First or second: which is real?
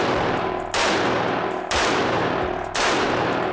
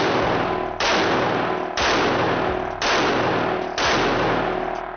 second